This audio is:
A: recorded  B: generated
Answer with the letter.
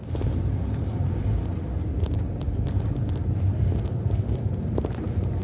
A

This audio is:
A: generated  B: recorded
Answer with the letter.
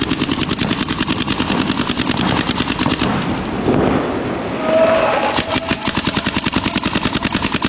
B